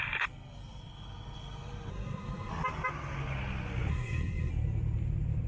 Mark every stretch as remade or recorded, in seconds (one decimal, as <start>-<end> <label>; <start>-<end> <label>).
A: 0.0-1.9 recorded; 1.9-2.5 remade; 2.5-3.9 recorded; 3.9-4.5 remade; 4.5-5.5 recorded